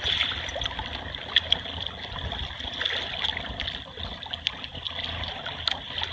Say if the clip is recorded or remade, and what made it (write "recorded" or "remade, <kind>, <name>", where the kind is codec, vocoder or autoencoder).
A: recorded